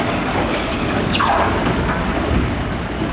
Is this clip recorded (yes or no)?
no